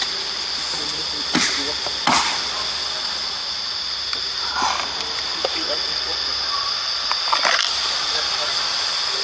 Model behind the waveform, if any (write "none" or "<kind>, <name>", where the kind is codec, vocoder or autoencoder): none